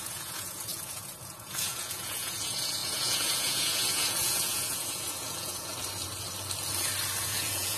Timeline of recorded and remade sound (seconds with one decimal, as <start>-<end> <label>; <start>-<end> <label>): 0.0-5.7 remade; 5.7-7.2 recorded; 7.2-7.8 remade